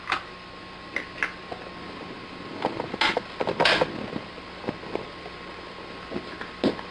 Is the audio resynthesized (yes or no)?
no